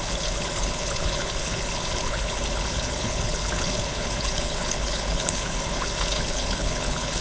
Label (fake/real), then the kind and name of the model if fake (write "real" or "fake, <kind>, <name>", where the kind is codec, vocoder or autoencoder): fake, codec, HILCodec